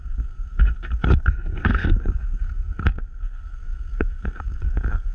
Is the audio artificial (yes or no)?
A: yes